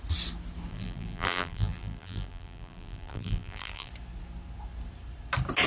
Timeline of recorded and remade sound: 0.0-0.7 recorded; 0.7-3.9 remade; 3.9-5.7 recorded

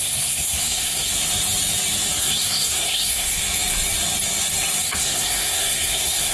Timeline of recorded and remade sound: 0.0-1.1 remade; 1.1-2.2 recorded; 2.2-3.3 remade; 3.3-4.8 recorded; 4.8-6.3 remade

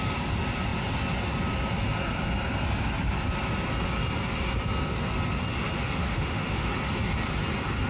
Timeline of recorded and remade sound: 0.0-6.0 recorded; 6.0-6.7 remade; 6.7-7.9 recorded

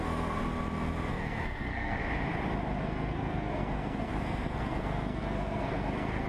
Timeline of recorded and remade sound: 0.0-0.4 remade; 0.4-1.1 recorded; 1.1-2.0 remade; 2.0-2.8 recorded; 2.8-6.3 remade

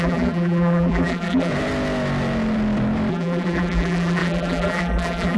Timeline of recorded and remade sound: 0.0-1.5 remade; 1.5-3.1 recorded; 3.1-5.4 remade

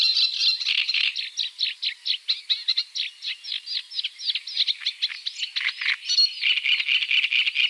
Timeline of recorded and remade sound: 0.0-7.7 recorded